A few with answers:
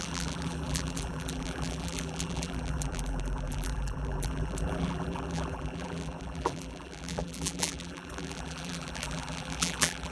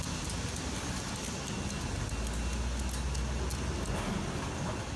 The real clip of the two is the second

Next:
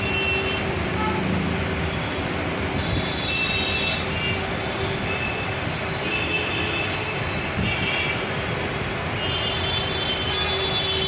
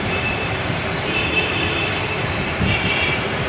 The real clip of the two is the first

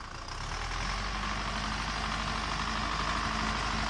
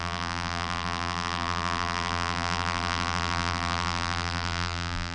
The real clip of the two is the first